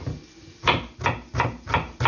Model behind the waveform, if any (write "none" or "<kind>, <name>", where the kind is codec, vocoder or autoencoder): none